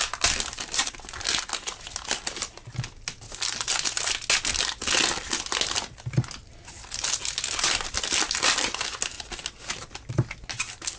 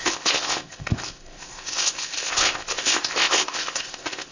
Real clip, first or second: first